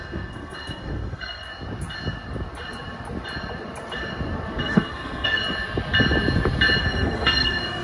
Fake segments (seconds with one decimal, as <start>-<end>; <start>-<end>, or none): 0.0-1.5; 4.6-5.4; 6.8-7.8